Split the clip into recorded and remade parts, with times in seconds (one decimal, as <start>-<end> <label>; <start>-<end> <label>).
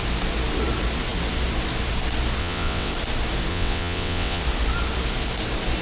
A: 0.0-2.4 recorded; 2.4-2.9 remade; 2.9-3.5 recorded; 3.5-4.4 remade; 4.4-5.8 recorded